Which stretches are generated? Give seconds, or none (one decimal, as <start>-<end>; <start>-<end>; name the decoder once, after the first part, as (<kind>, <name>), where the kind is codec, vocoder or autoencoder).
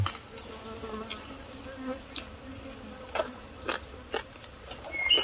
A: 1.1-4.2 (vocoder, BigVGAN v2)